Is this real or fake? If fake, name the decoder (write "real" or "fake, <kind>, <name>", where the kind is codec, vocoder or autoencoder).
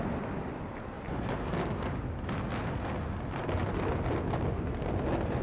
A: real